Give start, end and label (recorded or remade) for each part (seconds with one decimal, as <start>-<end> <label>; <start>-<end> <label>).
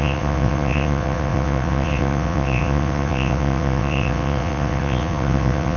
0.0-5.8 remade